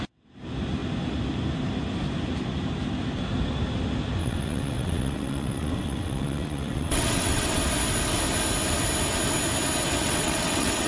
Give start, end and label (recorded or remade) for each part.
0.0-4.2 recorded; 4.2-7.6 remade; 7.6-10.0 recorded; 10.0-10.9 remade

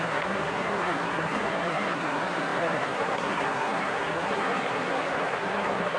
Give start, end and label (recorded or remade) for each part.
0.0-6.0 remade

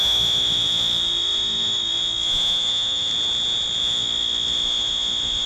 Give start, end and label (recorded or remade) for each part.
0.0-3.1 remade; 3.1-3.8 recorded; 3.8-5.5 remade